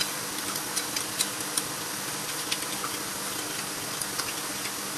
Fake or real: real